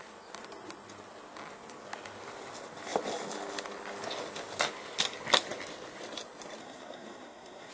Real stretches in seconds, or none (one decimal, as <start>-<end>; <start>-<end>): 0.0-6.6